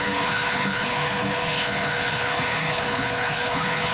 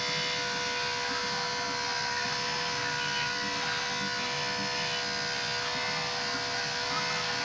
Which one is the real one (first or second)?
second